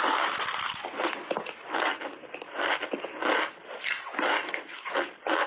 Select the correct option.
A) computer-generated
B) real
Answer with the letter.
B